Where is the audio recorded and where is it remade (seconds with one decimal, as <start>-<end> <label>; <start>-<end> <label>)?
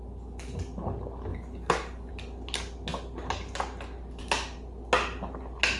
0.0-1.3 recorded; 1.3-2.1 remade; 2.1-5.8 recorded